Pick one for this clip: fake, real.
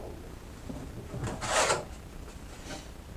real